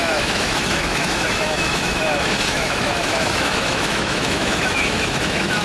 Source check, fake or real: fake